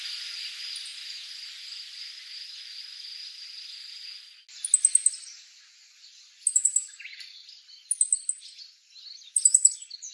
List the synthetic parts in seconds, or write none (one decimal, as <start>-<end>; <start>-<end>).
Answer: none